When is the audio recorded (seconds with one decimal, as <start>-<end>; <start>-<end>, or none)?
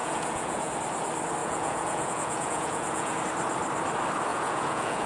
0.7-1.4; 3.2-4.3